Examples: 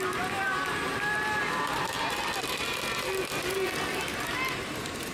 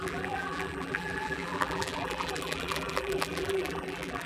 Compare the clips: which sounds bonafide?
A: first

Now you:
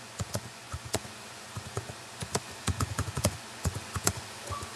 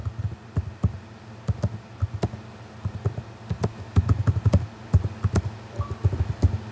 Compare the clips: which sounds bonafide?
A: second